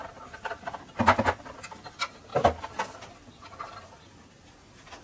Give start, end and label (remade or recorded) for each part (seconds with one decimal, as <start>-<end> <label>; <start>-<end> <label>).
0.0-5.0 recorded